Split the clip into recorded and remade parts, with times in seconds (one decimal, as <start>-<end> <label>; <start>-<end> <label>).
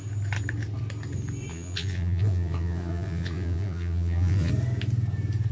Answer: 0.0-1.5 recorded; 1.5-4.5 remade; 4.5-5.5 recorded